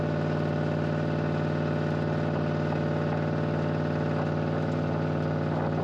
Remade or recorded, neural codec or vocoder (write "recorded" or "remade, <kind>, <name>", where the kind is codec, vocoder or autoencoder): recorded